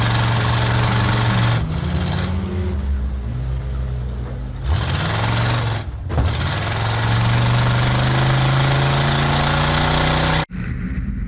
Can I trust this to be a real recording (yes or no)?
yes